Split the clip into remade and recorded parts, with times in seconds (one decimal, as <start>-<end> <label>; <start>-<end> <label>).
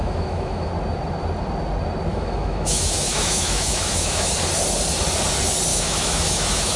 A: 0.0-0.7 remade; 0.7-2.1 recorded; 2.1-4.3 remade; 4.3-5.7 recorded; 5.7-6.8 remade